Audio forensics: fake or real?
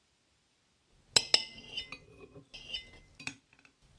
real